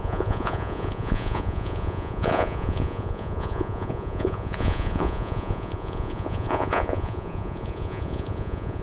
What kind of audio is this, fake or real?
fake